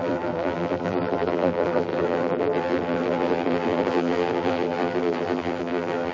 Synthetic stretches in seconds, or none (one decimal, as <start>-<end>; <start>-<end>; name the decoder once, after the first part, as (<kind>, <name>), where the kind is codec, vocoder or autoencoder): 0.0-6.1 (vocoder, BigVGAN v2)

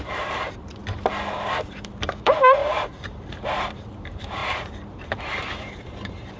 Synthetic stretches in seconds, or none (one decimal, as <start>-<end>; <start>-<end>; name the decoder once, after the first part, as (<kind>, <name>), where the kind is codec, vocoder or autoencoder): 0.0-0.8 (vocoder, BigVGAN v2); 1.7-6.4